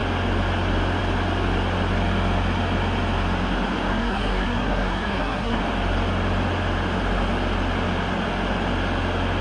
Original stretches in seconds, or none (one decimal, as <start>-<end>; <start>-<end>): 0.0-3.9; 5.6-9.4